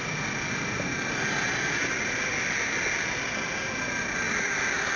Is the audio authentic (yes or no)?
yes